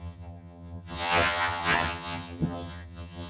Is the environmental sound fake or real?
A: fake